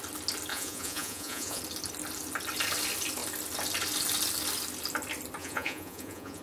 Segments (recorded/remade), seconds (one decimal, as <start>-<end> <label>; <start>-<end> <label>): 0.0-0.5 recorded; 0.5-1.6 remade; 1.6-5.4 recorded; 5.4-6.4 remade